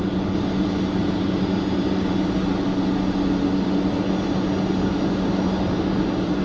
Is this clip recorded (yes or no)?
yes